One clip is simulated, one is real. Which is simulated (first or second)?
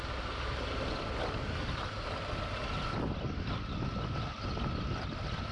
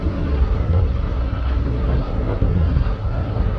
second